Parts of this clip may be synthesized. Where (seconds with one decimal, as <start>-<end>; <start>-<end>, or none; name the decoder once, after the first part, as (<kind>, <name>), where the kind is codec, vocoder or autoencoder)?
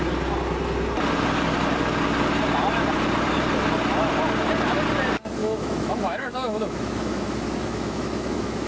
5.4-8.7 (autoencoder, DAC-VAE)